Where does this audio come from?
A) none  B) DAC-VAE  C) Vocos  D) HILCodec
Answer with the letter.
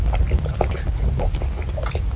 A